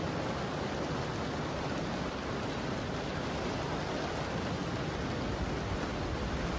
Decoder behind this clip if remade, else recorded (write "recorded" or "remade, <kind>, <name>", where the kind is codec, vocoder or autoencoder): recorded